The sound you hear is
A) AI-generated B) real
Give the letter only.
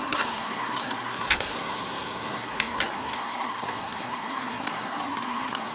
A